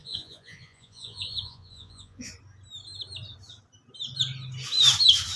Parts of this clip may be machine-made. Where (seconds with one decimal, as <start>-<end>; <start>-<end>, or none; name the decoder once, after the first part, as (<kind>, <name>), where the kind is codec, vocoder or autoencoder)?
0.0-2.3 (vocoder, Vocos)